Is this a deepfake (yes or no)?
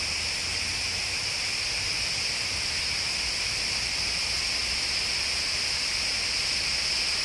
no